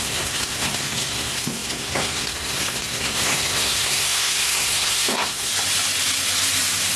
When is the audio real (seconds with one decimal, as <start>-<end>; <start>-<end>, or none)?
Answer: 5.5-7.0